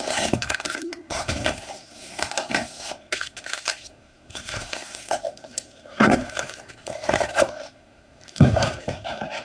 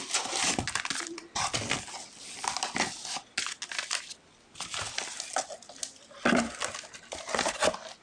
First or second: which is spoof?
first